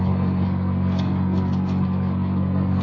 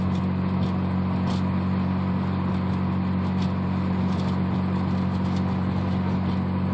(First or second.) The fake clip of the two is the first